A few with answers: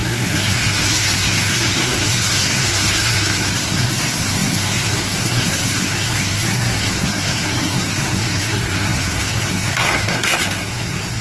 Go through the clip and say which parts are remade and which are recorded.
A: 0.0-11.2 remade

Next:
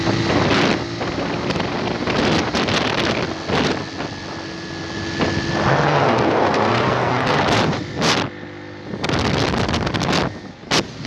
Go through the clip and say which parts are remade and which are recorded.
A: 0.0-5.7 recorded; 5.7-7.4 remade; 7.4-11.1 recorded